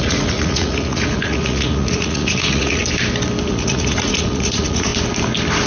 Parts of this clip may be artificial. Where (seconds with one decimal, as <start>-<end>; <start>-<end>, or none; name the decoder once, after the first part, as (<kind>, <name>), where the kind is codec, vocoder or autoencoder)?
0.0-2.8 (vocoder, Vocos); 3.5-4.9